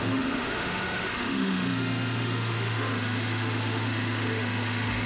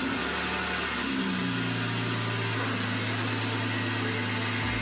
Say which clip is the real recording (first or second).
second